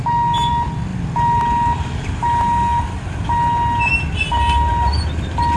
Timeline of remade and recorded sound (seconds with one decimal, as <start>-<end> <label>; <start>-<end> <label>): 0.0-5.6 recorded